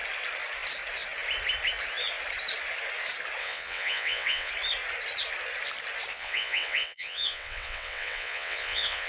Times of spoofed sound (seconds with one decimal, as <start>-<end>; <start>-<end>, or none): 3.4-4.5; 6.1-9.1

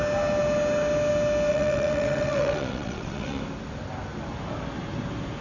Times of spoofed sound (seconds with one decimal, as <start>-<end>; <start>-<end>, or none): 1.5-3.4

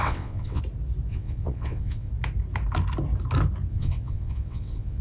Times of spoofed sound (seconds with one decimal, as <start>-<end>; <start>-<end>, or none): 0.0-0.6; 1.1-2.1; 3.7-5.0

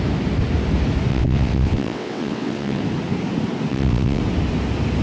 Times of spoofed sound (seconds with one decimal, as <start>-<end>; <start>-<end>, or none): 1.1-2.8; 3.7-4.2

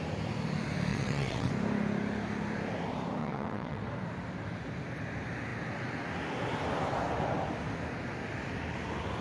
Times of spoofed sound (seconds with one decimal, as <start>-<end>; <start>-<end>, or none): 0.9-1.5; 3.2-3.8

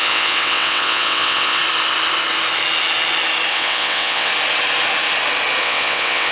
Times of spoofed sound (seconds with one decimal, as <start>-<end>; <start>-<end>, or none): 0.0-1.6; 3.5-4.3; 5.6-6.3

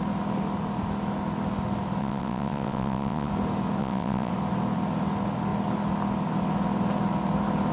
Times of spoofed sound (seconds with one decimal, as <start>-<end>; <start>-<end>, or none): 2.0-3.3; 3.8-4.3